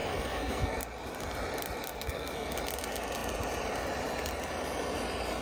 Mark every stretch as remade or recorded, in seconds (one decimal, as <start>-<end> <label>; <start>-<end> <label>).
0.0-0.8 remade; 0.8-1.9 recorded; 1.9-2.5 remade; 2.5-5.4 recorded